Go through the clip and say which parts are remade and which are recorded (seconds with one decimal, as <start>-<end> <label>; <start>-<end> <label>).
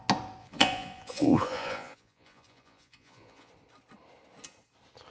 0.0-0.4 recorded; 0.4-3.5 remade; 3.5-5.1 recorded